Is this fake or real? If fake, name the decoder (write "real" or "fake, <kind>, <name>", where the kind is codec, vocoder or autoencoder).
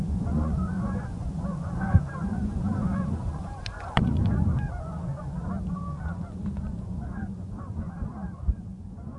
fake, vocoder, Vocos